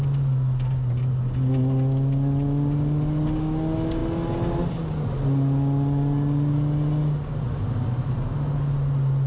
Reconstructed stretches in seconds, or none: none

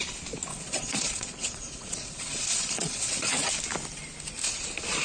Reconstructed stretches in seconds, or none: 0.5-3.5 (vocoder, Vocos)

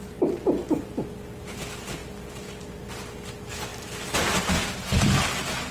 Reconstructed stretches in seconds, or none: none

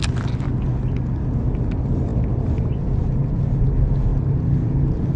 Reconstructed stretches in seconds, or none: none

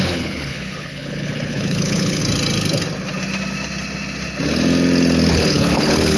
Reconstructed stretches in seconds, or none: 0.0-2.2 (codec, HILCodec); 5.3-6.2

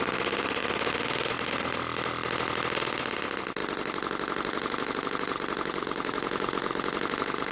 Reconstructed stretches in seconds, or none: none